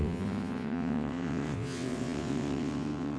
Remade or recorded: remade